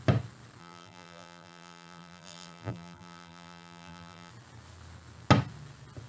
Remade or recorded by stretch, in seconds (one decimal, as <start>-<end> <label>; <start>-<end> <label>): 0.0-0.6 recorded; 0.6-4.3 remade; 4.3-6.1 recorded